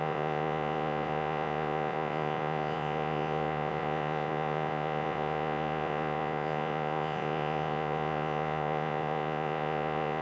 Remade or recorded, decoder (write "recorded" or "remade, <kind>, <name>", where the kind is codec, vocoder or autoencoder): remade, vocoder, Vocos